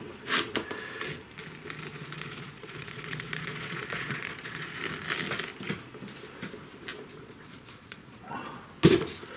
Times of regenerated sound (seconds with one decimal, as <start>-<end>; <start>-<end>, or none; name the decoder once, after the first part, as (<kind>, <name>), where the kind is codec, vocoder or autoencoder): 1.9-4.8 (vocoder, Vocos); 6.9-8.6

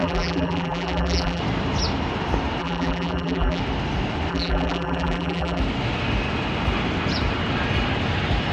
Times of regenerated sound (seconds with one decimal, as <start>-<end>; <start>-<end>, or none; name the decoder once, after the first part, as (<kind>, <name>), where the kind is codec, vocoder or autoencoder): 0.0-1.4 (vocoder, BigVGAN v2); 2.6-3.6; 4.3-5.6

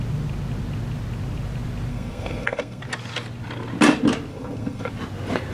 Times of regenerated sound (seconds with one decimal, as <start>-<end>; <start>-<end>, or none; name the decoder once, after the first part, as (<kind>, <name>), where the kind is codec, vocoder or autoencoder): 1.9-2.8 (codec, SNAC); 4.3-4.9

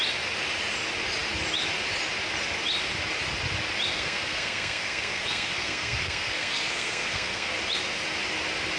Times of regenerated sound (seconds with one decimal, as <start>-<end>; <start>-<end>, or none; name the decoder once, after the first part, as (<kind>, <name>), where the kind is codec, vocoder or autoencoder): 3.9-7.5 (codec, SNAC)